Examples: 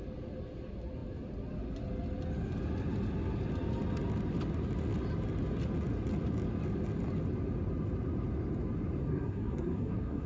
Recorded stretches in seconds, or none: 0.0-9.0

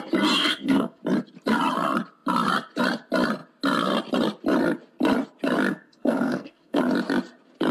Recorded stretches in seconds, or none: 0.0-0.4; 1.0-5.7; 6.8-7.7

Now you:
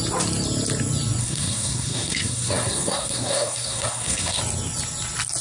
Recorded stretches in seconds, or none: 0.0-1.2; 4.4-5.4